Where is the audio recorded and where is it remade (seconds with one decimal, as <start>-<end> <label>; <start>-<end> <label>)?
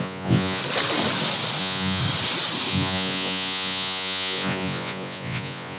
0.0-0.6 remade; 0.6-1.6 recorded; 1.6-2.0 remade; 2.0-2.7 recorded; 2.7-5.8 remade